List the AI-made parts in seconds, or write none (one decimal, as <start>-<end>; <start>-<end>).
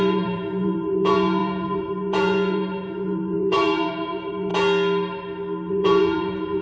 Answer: 0.0-4.5; 5.7-6.6